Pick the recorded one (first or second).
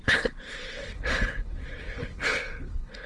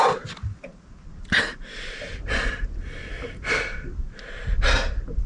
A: second